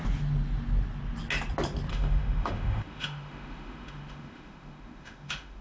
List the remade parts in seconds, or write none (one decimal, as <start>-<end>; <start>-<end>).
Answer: 1.9-5.6